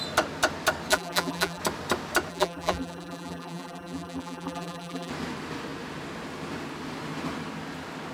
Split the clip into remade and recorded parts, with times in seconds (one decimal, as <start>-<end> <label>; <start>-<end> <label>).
0.0-0.9 recorded; 0.9-1.6 remade; 1.6-2.3 recorded; 2.3-5.1 remade; 5.1-8.1 recorded